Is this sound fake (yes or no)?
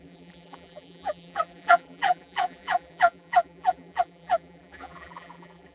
yes